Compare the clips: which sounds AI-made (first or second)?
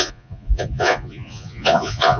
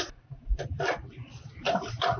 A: first